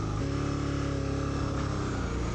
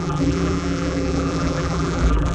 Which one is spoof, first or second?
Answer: second